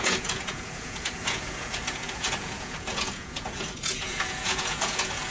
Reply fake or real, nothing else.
fake